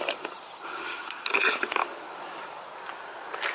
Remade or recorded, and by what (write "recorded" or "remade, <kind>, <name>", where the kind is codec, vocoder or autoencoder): recorded